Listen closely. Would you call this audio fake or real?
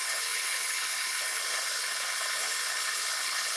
fake